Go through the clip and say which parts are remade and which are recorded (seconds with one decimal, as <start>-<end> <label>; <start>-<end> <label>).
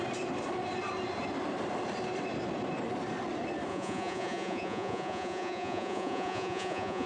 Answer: 0.0-3.7 recorded; 3.7-7.1 remade